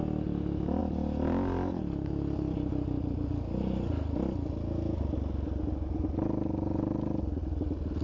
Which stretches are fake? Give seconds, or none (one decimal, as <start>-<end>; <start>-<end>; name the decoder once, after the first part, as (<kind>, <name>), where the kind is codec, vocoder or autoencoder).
none